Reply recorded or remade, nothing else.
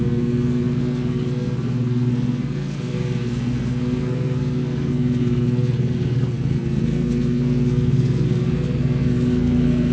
remade